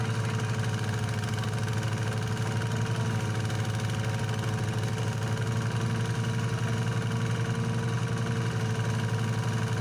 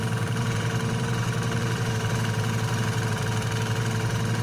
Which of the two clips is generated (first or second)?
second